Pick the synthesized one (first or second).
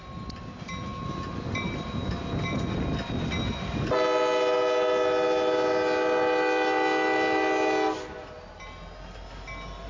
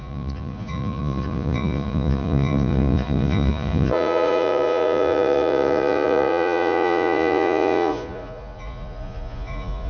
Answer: second